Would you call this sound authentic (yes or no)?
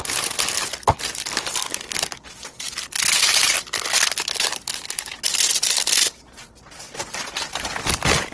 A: yes